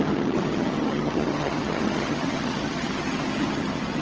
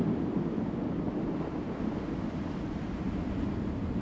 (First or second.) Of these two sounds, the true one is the second